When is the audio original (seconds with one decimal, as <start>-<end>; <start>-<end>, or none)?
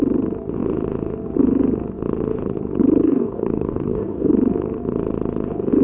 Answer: 0.0-3.0; 4.3-5.8